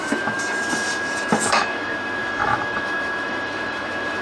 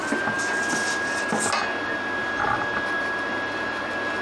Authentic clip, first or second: second